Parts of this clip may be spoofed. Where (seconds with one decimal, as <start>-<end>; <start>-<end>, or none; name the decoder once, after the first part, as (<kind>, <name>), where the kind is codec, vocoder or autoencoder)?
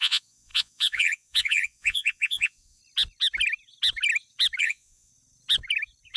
0.0-2.8 (vocoder, Vocos); 4.6-5.1